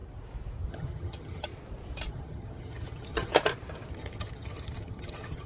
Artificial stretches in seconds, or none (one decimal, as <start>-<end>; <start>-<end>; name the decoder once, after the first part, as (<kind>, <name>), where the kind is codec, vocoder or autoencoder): 0.7-1.5 (vocoder, HiFi-GAN); 2.1-3.3; 3.9-5.5